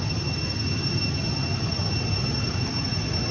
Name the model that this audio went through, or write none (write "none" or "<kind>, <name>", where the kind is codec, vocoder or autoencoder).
none